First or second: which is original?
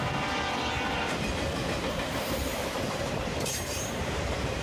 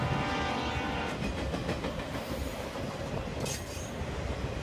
second